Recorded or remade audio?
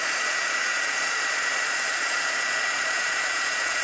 remade